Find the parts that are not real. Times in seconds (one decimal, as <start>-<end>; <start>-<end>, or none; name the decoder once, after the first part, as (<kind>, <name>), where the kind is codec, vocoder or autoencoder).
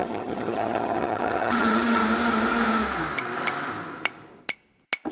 0.0-2.0 (vocoder, HiFi-GAN)